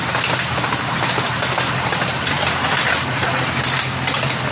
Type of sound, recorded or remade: recorded